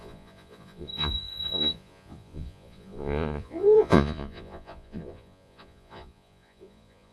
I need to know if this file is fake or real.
fake